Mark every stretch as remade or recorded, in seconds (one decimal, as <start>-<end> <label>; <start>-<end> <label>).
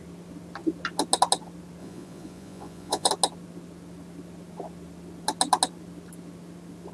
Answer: 0.0-1.8 recorded; 1.8-3.1 remade; 3.1-6.9 recorded